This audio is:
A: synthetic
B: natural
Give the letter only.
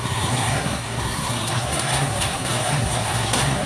A